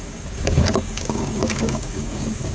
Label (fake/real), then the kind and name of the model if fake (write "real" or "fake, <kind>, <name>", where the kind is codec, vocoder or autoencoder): fake, codec, DAC